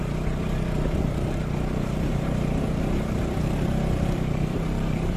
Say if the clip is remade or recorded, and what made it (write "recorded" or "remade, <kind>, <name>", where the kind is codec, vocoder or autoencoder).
remade, vocoder, BigVGAN v2